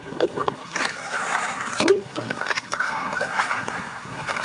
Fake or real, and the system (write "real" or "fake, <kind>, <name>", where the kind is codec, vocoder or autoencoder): fake, codec, SNAC